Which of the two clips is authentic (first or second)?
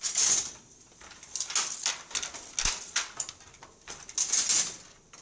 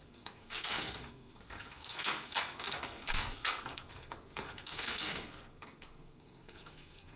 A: first